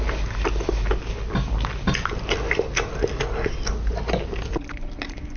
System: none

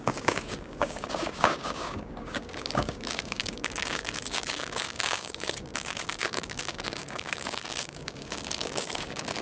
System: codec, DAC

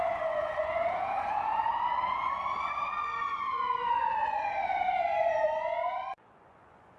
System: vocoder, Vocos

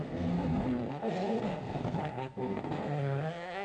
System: codec, SNAC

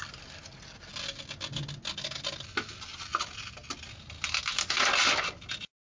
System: none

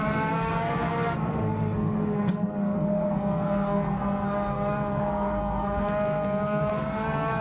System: codec, SNAC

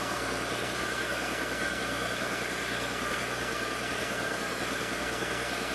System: codec, SNAC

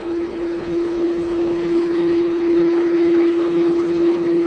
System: codec, HILCodec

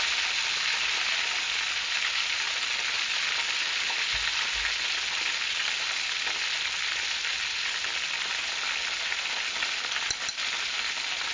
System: none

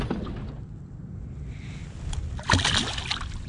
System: none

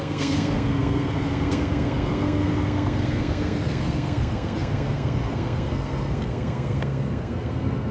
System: codec, SNAC